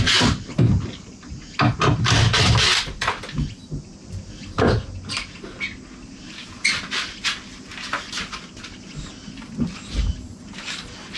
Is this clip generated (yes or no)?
no